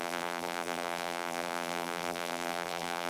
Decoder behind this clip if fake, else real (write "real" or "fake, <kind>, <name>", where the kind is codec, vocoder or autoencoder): fake, vocoder, BigVGAN v2